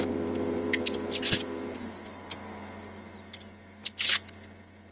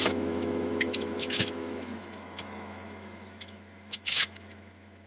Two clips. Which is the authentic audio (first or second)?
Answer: first